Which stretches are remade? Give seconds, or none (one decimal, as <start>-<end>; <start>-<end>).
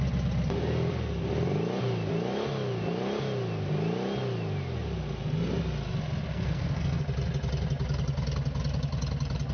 6.3-7.0